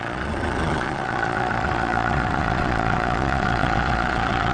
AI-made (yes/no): yes